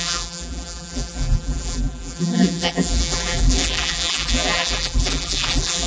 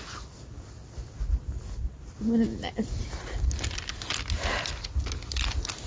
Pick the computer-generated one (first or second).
first